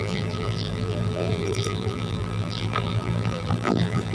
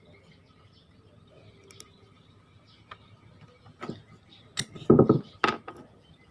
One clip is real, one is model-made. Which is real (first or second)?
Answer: second